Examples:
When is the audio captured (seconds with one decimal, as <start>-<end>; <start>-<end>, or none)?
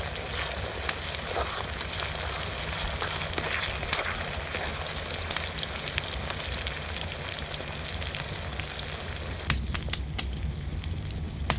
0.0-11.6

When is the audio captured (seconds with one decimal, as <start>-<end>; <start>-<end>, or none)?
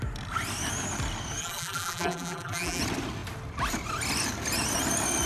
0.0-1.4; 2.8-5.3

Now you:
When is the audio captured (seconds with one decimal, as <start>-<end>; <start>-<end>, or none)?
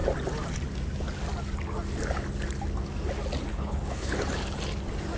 0.0-3.5; 4.1-5.2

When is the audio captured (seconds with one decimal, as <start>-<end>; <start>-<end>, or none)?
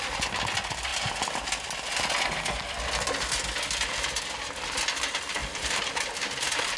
0.0-5.4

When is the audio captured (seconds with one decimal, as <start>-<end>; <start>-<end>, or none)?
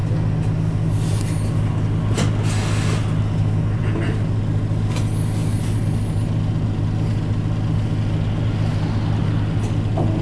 0.0-10.2